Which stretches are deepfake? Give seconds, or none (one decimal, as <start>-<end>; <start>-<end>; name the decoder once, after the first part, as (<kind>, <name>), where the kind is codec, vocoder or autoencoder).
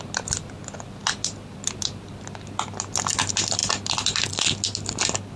none